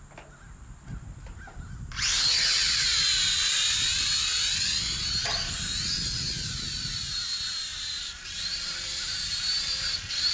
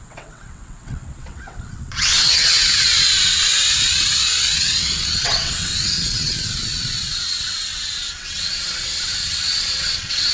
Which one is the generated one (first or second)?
second